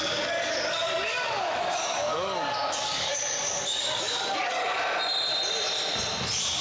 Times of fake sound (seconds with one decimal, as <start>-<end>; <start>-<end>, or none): 0.0-4.6